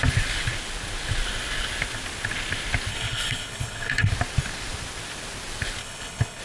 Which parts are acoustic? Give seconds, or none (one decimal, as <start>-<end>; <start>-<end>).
0.0-2.9; 4.1-5.8